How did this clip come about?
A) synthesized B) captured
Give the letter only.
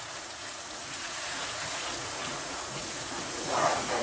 A